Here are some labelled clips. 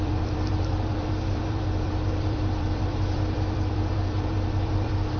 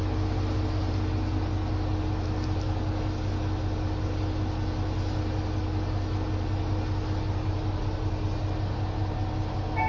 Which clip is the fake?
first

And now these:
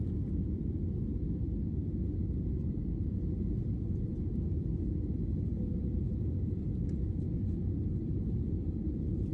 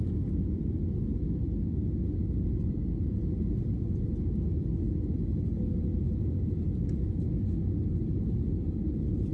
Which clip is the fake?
first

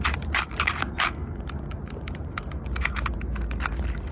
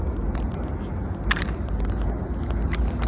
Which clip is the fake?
first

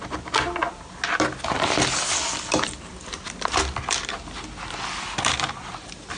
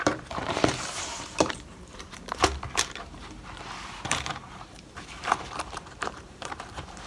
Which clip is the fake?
second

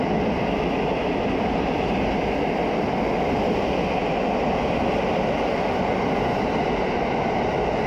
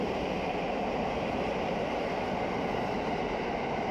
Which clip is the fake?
second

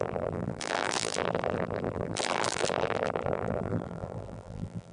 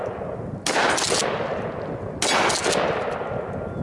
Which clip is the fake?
first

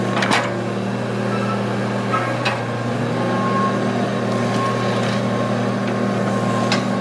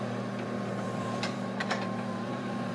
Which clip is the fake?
second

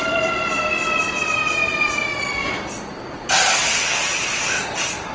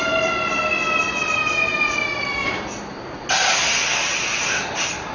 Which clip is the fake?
first